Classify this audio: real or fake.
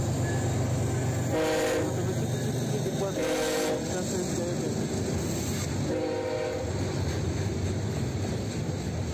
real